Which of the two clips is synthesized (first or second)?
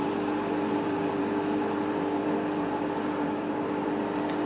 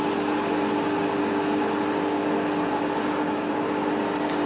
first